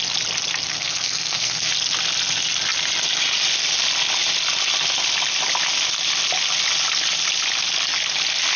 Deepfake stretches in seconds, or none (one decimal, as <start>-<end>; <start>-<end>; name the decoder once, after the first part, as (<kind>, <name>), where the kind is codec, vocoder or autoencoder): 0.7-1.7 (codec, SNAC)